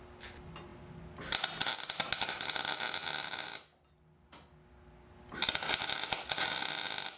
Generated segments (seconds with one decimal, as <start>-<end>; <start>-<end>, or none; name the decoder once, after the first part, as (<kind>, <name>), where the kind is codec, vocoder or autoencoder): none